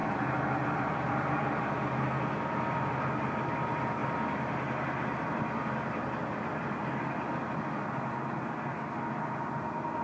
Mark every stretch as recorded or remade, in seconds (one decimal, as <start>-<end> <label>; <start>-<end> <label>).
0.0-1.4 remade; 1.4-10.0 recorded